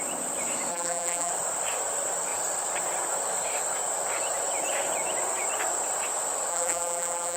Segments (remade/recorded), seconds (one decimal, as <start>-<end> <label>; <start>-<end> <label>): 0.0-0.7 recorded; 0.7-1.3 remade; 1.3-6.5 recorded; 6.5-7.4 remade